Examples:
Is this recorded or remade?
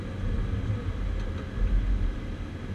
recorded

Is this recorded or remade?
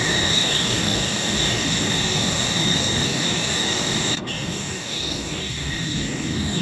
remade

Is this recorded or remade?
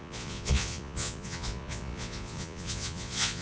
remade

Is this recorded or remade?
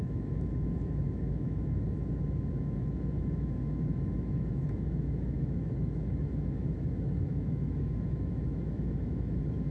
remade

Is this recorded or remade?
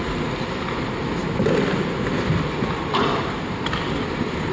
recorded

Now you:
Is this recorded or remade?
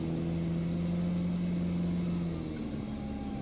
recorded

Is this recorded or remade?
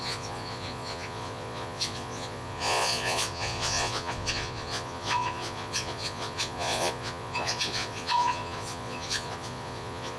remade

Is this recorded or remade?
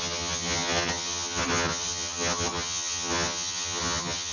remade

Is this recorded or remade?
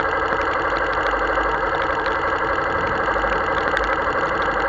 recorded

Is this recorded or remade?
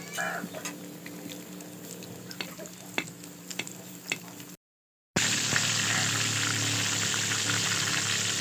recorded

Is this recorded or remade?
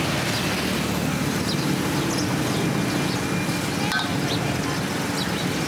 recorded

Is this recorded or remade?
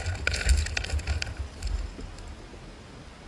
recorded